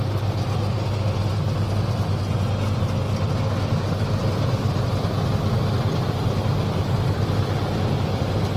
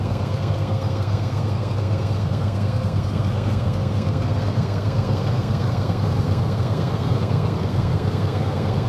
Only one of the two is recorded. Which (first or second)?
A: first